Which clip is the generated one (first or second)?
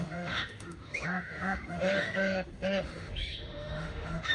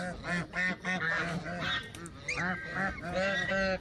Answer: first